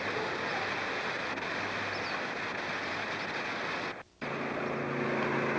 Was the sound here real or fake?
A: real